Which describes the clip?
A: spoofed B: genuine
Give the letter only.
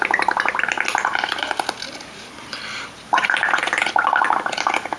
B